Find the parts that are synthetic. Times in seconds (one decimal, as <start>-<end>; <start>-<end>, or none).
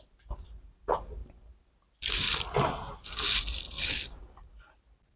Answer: none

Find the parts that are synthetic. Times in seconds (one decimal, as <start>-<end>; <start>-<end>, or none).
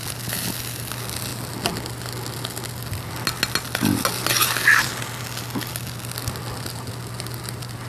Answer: none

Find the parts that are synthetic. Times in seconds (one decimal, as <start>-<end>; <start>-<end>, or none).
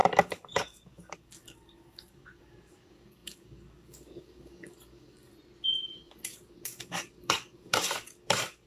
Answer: 0.0-5.3; 5.8-8.7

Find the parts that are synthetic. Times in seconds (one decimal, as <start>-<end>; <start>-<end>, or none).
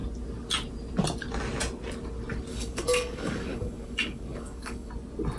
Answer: 2.5-4.9